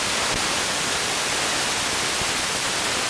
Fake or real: real